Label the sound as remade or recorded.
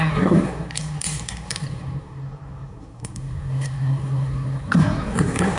remade